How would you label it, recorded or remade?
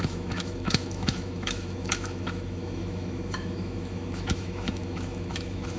remade